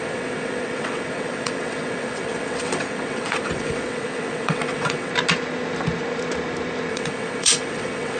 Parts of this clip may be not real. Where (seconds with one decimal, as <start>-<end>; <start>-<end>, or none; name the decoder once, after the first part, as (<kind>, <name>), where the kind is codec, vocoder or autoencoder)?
0.0-5.1 (vocoder, WaveNeXt); 6.9-8.2